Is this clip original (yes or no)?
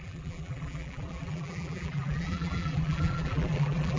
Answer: no